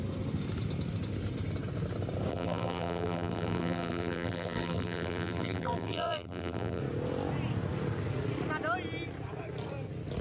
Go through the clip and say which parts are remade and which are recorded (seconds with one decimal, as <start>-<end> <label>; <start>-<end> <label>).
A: 0.0-2.3 recorded; 2.3-6.8 remade; 6.8-10.2 recorded